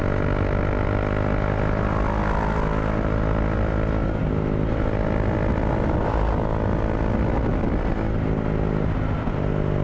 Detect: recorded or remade recorded